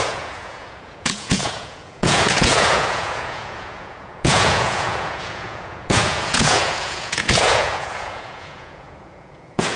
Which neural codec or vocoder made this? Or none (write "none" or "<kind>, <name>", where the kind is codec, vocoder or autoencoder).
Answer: vocoder, Vocos